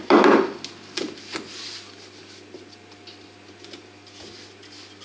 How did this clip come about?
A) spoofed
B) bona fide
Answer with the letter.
B